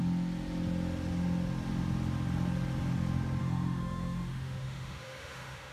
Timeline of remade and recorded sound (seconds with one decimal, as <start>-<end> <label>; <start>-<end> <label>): 0.0-3.4 recorded; 3.4-5.7 remade